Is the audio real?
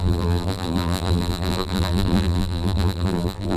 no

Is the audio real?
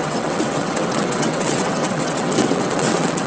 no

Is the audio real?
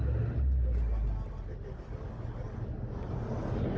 yes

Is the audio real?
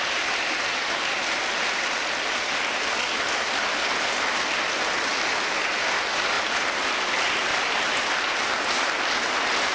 yes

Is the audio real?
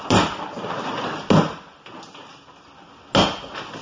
yes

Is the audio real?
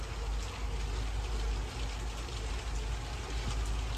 yes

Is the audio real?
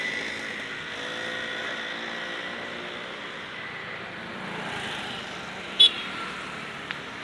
yes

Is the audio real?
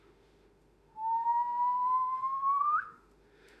no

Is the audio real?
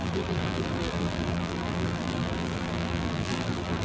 no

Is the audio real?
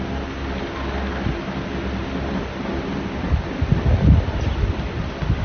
yes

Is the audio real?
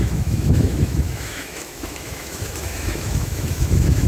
no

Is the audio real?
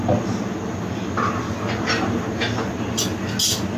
yes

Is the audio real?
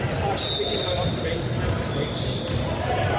yes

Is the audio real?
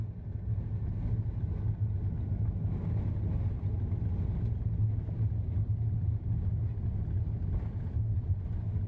yes